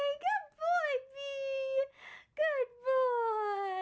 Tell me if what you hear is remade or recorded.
recorded